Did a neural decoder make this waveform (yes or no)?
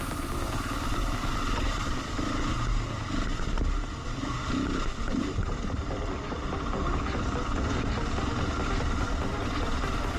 no